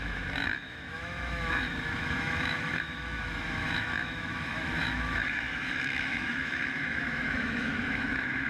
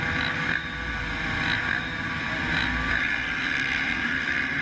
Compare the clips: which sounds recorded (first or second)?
second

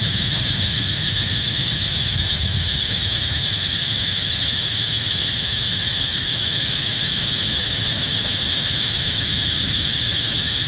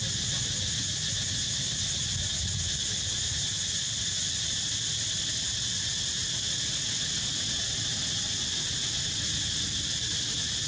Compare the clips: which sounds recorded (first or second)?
second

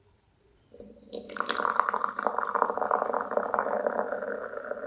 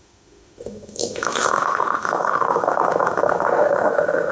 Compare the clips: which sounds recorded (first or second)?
first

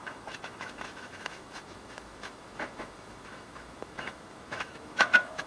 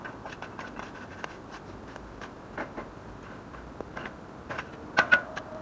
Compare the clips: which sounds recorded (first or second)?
second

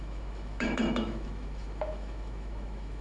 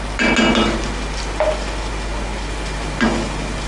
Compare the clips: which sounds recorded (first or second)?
second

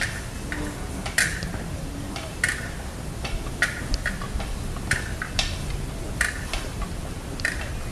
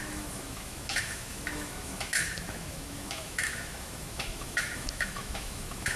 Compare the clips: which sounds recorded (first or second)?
first